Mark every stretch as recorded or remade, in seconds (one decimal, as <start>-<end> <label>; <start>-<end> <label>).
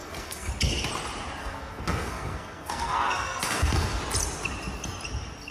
0.0-0.5 remade; 0.5-1.4 recorded; 1.4-4.0 remade; 4.0-5.5 recorded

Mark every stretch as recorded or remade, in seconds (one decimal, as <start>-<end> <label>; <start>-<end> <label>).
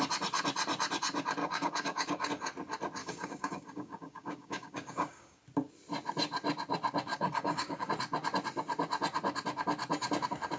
0.0-1.4 recorded; 1.4-2.3 remade; 2.3-3.0 recorded; 3.0-5.4 remade; 5.4-7.1 recorded; 7.1-7.9 remade; 7.9-10.6 recorded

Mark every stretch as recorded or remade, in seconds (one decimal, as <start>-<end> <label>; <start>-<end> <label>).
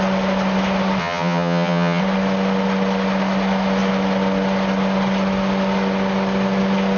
0.0-1.0 recorded; 1.0-2.0 remade; 2.0-7.0 recorded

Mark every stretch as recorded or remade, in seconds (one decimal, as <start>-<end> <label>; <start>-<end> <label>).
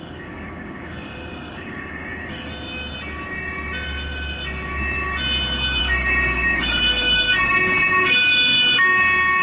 0.0-2.5 remade; 2.5-5.8 recorded; 5.8-9.4 remade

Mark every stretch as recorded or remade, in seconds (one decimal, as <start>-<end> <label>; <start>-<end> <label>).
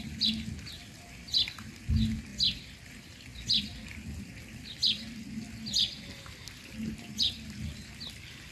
0.0-8.5 recorded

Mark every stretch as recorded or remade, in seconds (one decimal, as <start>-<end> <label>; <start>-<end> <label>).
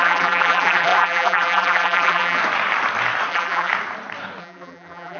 0.0-2.4 remade; 2.4-3.3 recorded; 3.3-3.7 remade; 3.7-4.4 recorded; 4.4-5.2 remade